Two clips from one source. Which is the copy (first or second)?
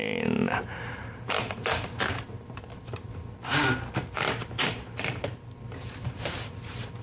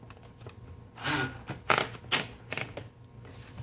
first